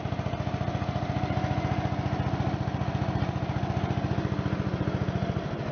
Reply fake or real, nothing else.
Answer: real